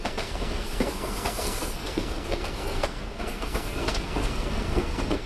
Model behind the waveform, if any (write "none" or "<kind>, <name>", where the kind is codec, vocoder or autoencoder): codec, SNAC